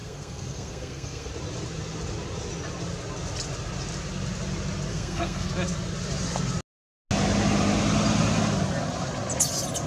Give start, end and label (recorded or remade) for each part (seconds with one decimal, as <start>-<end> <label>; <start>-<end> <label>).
0.0-1.3 remade; 1.3-4.9 recorded; 4.9-5.5 remade; 5.5-9.9 recorded